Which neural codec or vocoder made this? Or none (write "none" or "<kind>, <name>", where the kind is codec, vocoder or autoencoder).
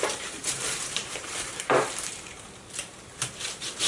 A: vocoder, BigVGAN v2